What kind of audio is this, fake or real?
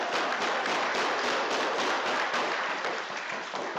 fake